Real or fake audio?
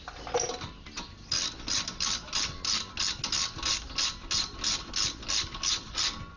real